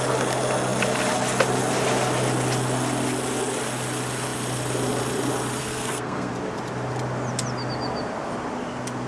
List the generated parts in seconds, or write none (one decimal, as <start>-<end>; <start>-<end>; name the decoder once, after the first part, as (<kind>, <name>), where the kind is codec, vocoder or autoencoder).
5.6-6.3 (codec, SNAC)